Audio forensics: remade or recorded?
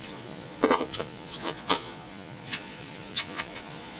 remade